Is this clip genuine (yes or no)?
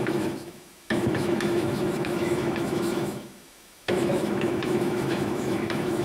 no